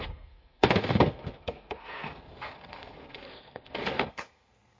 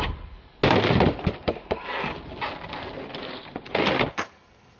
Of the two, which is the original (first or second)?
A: second